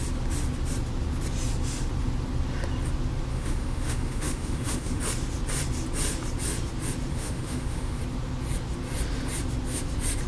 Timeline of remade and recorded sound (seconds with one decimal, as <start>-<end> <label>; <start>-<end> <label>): 0.0-3.3 recorded; 3.3-5.0 remade; 5.0-7.1 recorded; 7.1-8.0 remade; 8.0-10.3 recorded